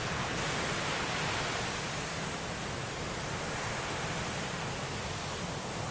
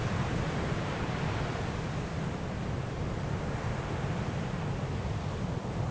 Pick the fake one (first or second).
second